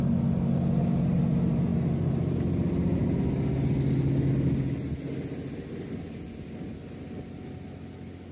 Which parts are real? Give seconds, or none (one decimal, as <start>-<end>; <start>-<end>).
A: 0.0-8.3